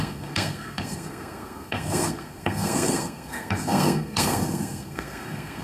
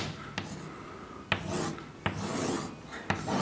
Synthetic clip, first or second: first